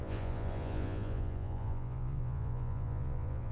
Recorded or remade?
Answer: remade